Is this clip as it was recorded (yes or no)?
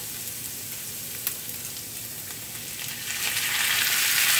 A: yes